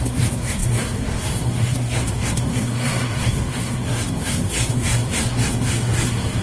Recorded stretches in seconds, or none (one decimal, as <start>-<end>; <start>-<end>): none